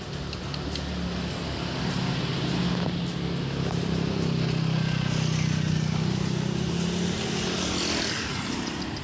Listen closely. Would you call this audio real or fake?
real